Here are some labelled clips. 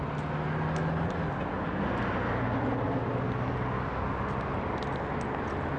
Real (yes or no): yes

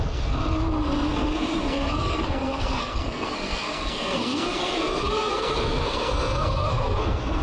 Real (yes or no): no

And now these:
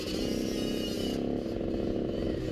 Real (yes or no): yes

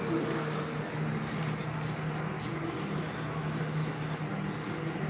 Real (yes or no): yes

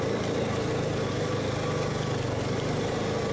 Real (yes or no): yes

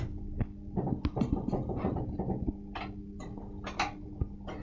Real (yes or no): yes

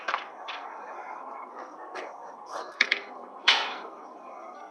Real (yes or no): no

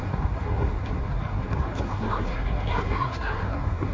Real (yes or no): no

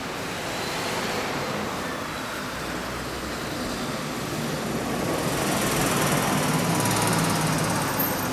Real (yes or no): yes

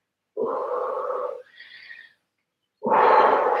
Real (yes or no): yes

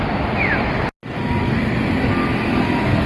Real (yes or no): yes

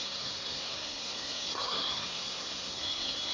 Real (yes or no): no